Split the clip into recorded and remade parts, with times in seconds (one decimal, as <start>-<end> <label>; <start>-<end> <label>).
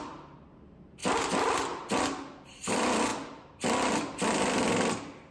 0.0-5.3 recorded